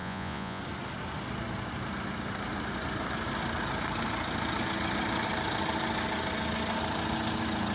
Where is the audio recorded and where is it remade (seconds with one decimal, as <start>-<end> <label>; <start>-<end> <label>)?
0.0-0.6 remade; 0.6-7.7 recorded